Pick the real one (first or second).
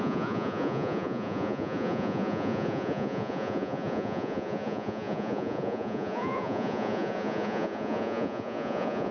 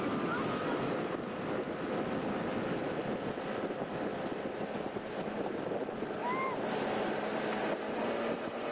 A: second